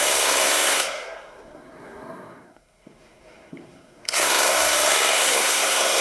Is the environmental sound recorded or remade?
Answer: remade